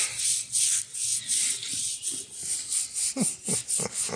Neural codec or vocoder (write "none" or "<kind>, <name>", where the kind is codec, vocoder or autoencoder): none